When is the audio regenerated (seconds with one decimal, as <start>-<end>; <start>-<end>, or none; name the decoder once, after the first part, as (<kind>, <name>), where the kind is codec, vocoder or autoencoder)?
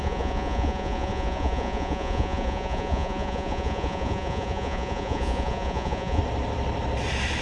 0.0-6.2 (vocoder, Vocos)